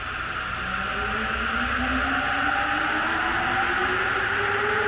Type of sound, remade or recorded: recorded